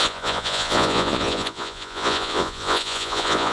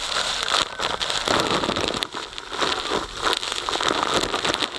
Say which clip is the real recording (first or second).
second